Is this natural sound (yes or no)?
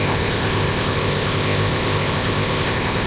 no